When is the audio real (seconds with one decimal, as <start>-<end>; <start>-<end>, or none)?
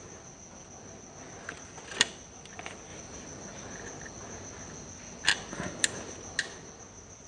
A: 0.0-7.3